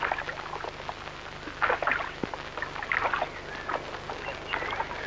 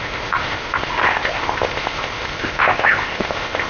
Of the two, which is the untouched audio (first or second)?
first